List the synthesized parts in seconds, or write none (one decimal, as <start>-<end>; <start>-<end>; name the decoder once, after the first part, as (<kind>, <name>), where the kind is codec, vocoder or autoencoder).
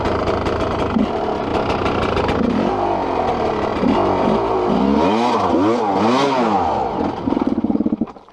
none